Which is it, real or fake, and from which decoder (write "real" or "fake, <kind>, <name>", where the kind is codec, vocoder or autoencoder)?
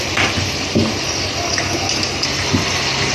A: real